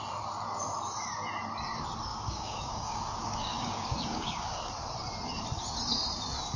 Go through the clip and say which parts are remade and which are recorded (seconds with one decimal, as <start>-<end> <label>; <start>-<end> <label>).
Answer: 0.0-2.1 recorded; 2.1-4.7 remade; 4.7-6.6 recorded